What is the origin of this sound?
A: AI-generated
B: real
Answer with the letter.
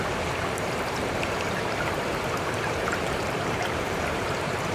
A